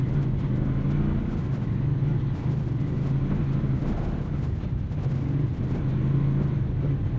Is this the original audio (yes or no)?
yes